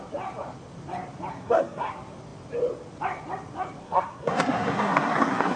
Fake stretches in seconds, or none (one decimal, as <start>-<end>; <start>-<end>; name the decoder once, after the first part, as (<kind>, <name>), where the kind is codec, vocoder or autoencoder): 1.3-1.9 (codec, SNAC); 3.8-5.6